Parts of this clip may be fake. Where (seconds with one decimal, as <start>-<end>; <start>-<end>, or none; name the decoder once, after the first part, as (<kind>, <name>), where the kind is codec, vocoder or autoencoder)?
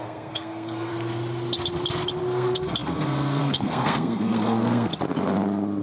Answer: 0.0-0.9 (codec, SNAC); 2.2-4.9